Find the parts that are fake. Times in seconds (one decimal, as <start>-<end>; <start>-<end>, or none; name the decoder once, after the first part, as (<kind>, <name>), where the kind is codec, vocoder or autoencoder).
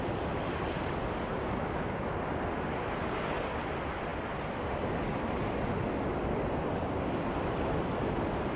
1.3-2.1 (codec, DAC); 3.0-3.6